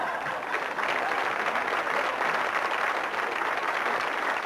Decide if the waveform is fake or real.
real